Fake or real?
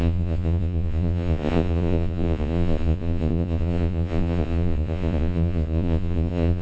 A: fake